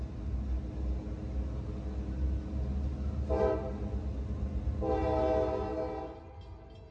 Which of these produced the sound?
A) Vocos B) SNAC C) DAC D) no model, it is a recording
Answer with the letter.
D